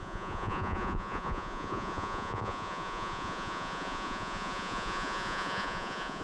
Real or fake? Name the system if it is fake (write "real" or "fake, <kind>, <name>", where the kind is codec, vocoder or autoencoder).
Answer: fake, vocoder, Vocos